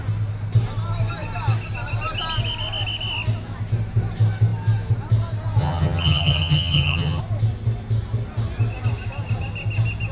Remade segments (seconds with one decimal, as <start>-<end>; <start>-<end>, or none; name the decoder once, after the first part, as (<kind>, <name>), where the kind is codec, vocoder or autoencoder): 5.6-7.2 (vocoder, HiFi-GAN)